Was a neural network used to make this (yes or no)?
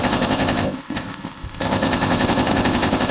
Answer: yes